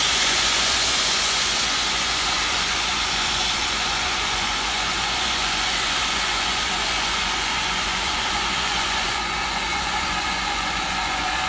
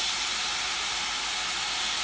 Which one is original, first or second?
second